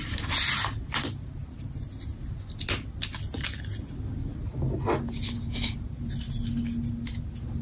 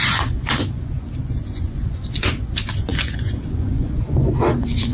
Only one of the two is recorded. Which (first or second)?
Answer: first